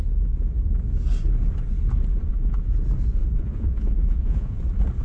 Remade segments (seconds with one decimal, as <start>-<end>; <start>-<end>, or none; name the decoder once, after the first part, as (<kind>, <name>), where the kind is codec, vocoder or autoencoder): 2.3-2.8 (vocoder, Vocos); 3.2-4.6